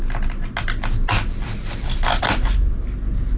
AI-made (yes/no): no